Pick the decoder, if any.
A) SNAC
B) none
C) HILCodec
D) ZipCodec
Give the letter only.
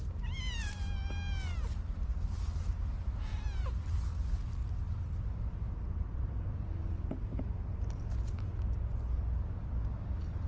B